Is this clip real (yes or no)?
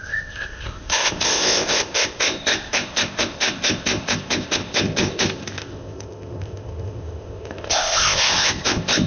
no